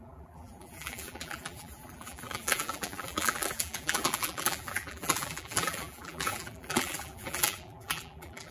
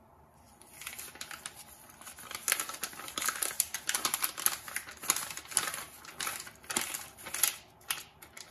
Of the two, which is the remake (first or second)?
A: first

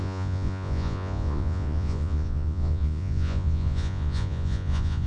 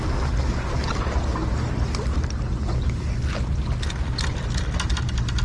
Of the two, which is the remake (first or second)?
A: first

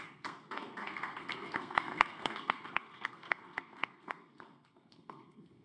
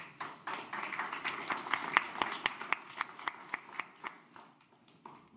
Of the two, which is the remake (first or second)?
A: first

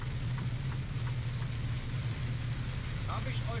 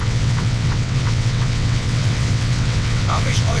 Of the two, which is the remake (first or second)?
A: second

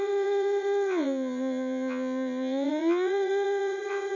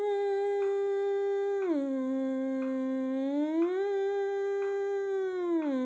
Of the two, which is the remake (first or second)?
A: first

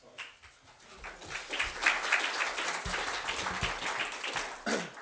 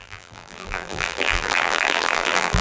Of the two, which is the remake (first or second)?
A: second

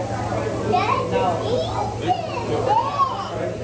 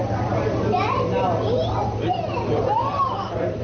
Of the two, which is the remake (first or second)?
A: second